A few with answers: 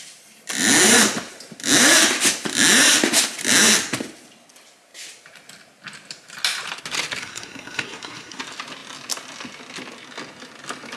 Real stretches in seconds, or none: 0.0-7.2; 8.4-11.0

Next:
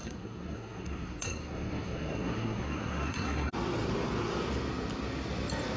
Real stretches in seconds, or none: 3.5-5.8

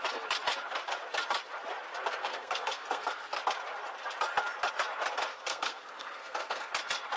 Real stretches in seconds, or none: 0.0-2.2; 3.4-5.3; 6.7-7.2